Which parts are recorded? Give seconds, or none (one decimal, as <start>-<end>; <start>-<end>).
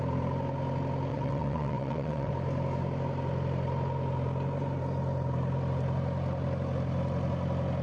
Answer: 0.0-1.1; 2.3-7.8